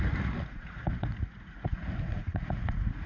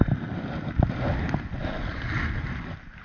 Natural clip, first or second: second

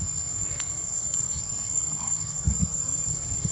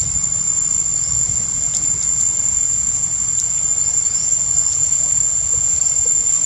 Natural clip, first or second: second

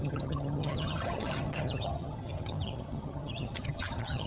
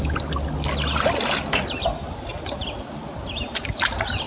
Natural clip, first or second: second